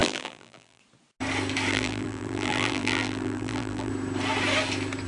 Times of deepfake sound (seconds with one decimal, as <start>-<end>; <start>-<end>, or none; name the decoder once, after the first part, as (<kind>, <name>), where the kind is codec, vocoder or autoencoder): 0.0-0.8 (vocoder, BigVGAN v2); 1.7-3.9